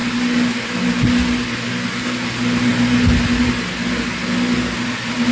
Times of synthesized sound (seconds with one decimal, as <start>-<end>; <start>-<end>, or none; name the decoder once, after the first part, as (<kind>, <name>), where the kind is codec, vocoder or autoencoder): none